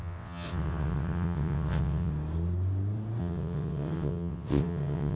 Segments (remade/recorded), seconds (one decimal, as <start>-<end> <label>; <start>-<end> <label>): 0.0-2.1 remade; 2.1-3.2 recorded; 3.2-5.2 remade